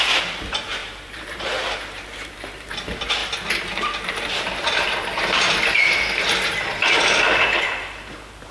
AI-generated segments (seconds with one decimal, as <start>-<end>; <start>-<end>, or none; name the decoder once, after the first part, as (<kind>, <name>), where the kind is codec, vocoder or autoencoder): 0.0-8.5 (vocoder, BigVGAN v2)